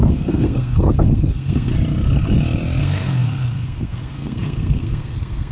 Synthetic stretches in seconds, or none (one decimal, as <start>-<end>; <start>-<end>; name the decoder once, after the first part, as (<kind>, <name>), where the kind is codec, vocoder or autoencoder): 0.0-1.7 (codec, SNAC); 2.8-5.5